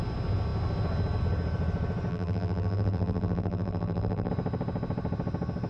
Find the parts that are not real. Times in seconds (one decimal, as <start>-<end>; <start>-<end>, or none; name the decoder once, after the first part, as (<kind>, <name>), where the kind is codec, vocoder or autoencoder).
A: 2.1-4.3 (vocoder, BigVGAN v2)